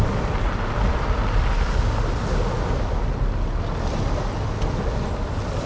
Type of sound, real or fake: real